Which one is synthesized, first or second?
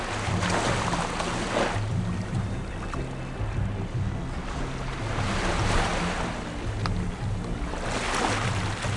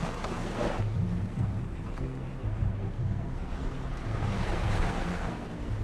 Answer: second